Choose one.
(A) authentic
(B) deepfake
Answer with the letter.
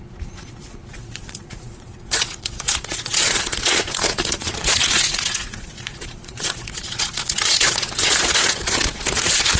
B